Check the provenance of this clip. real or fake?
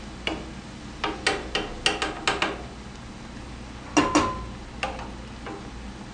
real